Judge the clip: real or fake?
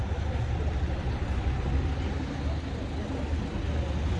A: real